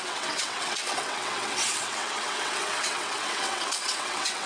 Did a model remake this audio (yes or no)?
yes